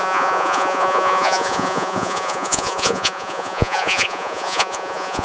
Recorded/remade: remade